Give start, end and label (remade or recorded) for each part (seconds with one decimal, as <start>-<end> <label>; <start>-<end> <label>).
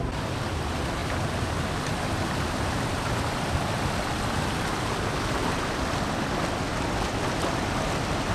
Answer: 0.0-8.3 recorded